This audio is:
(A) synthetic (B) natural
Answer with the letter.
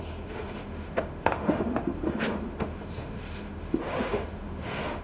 A